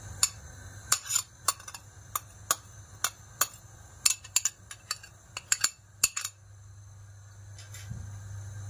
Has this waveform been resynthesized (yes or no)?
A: no